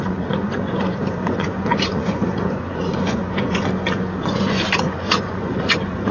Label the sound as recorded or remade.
remade